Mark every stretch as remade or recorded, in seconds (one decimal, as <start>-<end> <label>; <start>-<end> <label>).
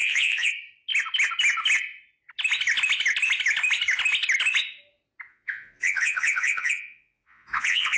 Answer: 0.0-0.5 remade; 0.5-5.3 recorded; 5.3-8.0 remade